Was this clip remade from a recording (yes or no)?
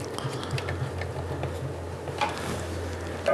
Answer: no